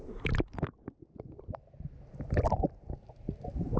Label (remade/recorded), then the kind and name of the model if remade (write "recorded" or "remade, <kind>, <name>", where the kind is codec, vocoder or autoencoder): recorded